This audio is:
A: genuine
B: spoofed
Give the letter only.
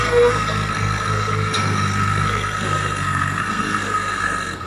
B